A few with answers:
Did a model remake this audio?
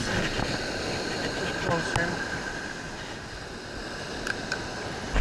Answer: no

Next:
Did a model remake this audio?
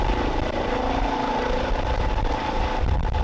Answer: yes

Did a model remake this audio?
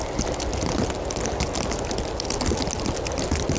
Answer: no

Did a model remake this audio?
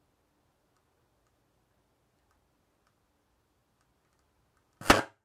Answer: no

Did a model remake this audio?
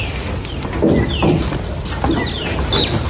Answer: no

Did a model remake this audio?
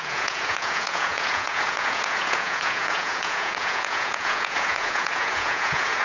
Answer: yes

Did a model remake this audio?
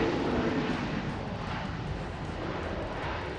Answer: no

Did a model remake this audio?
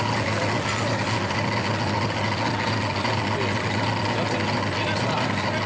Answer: no